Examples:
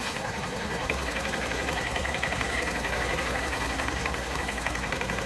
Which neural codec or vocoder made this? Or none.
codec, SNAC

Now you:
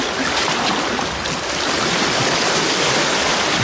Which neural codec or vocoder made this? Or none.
none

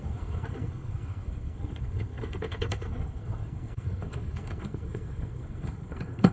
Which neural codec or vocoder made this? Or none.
codec, SNAC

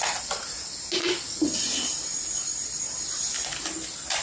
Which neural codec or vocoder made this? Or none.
none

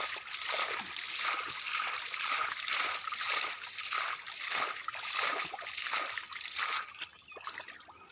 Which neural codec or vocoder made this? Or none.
none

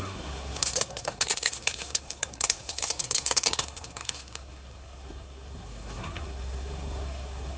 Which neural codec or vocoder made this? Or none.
codec, SNAC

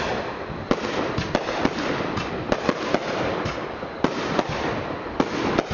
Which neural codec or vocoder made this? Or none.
none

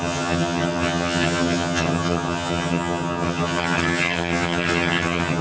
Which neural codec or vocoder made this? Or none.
vocoder, HiFi-GAN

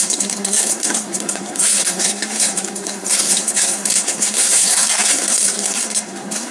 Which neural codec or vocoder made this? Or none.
codec, SNAC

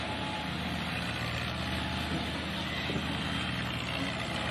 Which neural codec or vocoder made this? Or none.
none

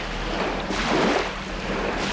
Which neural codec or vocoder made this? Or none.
none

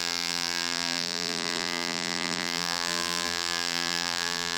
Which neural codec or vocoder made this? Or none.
vocoder, BigVGAN v2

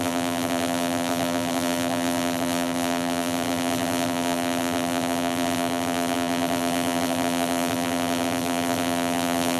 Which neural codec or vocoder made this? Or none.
vocoder, BigVGAN v2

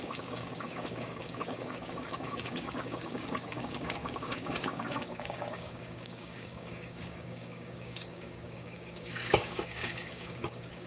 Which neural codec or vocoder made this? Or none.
codec, DAC